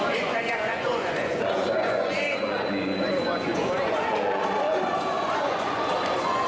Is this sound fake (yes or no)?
yes